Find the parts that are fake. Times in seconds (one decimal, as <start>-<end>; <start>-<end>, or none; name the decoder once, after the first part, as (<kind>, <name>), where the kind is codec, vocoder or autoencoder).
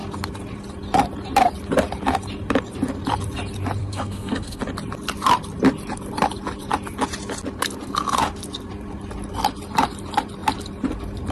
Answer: 3.8-4.6 (codec, SNAC)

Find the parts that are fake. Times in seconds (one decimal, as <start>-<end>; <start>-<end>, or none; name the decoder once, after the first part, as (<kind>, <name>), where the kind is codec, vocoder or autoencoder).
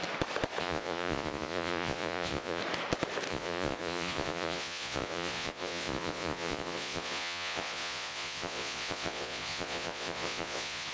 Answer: 0.6-2.6 (vocoder, Vocos); 3.3-10.9